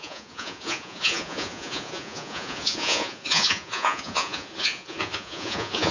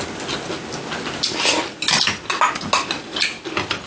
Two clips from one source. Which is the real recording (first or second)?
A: second